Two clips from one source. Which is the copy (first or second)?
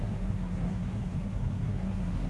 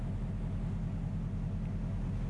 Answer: first